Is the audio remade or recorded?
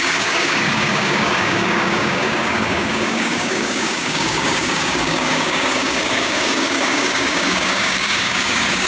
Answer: remade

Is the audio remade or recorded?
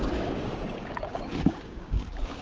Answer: remade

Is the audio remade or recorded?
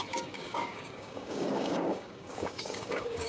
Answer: remade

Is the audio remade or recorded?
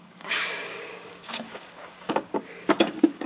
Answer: remade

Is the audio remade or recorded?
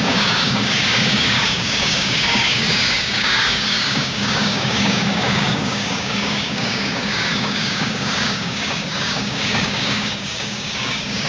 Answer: remade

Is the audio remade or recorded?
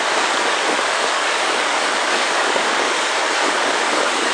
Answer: remade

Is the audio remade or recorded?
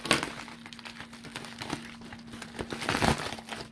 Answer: recorded